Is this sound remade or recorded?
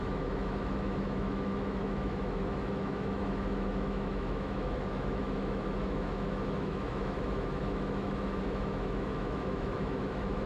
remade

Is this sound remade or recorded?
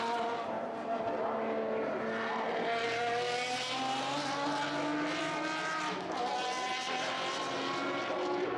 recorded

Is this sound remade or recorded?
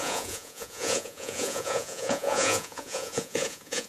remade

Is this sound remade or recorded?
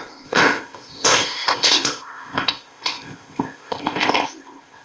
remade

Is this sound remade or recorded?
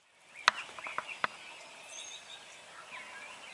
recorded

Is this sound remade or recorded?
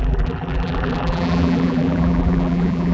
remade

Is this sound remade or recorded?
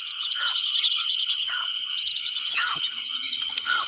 remade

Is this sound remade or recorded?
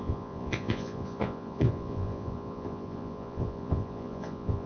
remade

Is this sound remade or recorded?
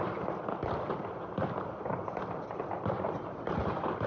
recorded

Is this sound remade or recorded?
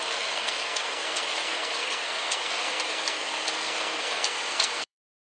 remade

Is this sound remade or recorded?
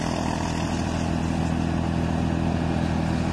recorded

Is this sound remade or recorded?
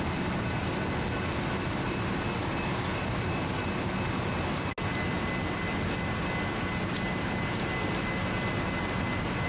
recorded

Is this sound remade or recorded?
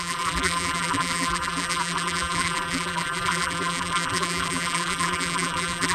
remade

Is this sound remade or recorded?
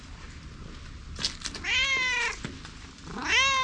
recorded